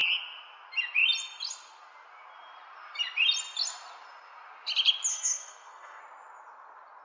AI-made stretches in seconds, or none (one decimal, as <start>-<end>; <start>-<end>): 5.1-6.0